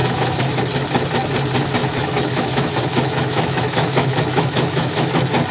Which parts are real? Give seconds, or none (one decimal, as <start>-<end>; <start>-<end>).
0.6-1.8; 5.1-5.5